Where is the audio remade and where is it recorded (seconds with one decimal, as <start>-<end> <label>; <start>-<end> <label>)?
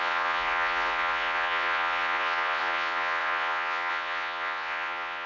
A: 0.0-5.3 remade